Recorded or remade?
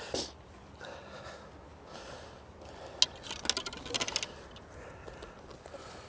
recorded